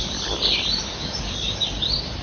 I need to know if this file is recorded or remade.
recorded